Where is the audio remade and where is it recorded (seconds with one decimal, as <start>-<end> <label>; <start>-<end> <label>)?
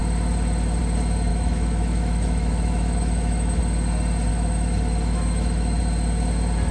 0.0-1.3 recorded; 1.3-3.6 remade; 3.6-4.3 recorded; 4.3-5.8 remade; 5.8-6.7 recorded